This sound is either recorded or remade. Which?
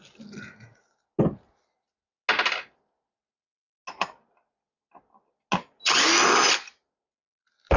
recorded